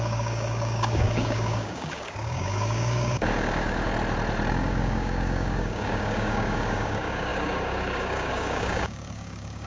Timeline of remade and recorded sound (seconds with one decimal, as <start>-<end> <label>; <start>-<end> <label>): 0.0-3.9 remade; 3.9-4.5 recorded; 4.5-9.7 remade

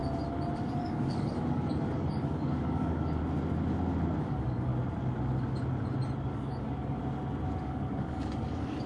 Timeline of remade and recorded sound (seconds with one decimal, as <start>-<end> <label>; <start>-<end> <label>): 0.0-0.5 recorded; 0.5-3.2 remade; 3.2-4.2 recorded; 4.2-4.7 remade; 4.7-6.2 recorded; 6.2-7.0 remade; 7.0-7.6 recorded; 7.6-8.9 remade

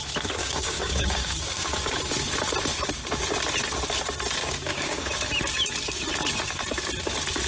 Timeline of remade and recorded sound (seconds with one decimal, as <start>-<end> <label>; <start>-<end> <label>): 0.0-0.4 recorded; 0.4-1.9 remade; 1.9-4.4 recorded; 4.4-5.1 remade; 5.1-7.5 recorded

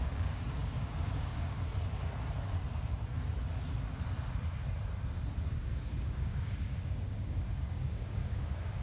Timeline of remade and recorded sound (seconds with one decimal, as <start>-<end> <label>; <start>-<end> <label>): 0.0-1.7 remade; 1.7-5.6 recorded; 5.6-8.8 remade

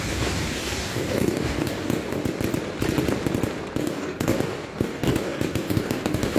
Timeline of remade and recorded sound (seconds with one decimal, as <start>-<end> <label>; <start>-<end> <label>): 0.0-2.2 remade; 2.2-3.8 recorded; 3.8-6.4 remade

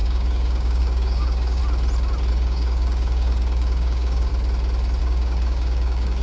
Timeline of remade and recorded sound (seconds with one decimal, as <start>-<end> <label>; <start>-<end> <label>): 0.0-1.6 remade; 1.6-2.3 recorded; 2.3-4.3 remade; 4.3-5.0 recorded; 5.0-6.2 remade